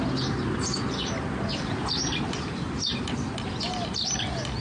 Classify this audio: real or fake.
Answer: real